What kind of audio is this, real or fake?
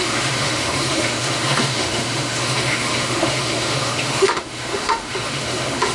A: fake